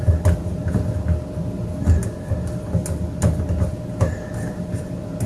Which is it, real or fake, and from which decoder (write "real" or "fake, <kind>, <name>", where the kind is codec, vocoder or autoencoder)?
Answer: real